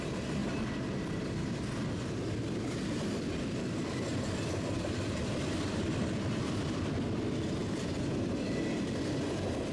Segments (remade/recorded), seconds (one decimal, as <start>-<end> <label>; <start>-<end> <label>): 0.0-4.1 recorded; 4.1-6.8 remade; 6.8-9.7 recorded